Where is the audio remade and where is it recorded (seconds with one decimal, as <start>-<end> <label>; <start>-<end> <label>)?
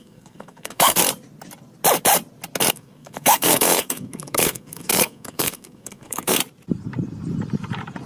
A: 0.0-1.0 remade; 1.0-2.7 recorded; 2.7-6.4 remade; 6.4-8.1 recorded